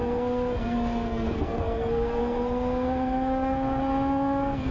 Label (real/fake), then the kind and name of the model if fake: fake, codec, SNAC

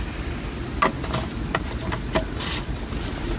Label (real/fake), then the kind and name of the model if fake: real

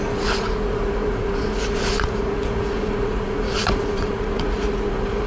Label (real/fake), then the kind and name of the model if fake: fake, vocoder, Vocos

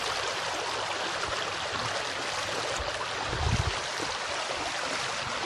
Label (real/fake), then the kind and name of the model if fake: real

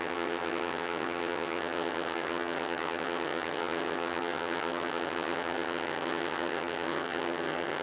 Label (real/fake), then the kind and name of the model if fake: fake, vocoder, HiFi-GAN